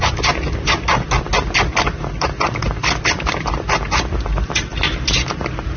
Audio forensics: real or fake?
real